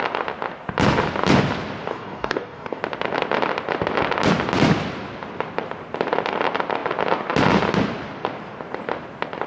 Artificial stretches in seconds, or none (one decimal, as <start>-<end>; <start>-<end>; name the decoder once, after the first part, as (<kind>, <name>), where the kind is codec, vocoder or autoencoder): 1.9-2.8 (codec, DAC)